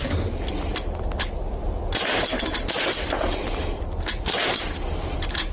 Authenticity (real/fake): real